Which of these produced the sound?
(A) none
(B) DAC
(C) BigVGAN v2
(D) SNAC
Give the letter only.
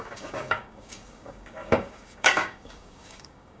B